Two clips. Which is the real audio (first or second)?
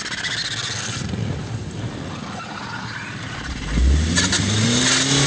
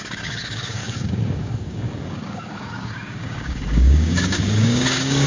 first